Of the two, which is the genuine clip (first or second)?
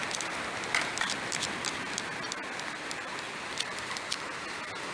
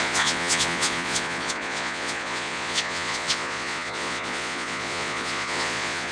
first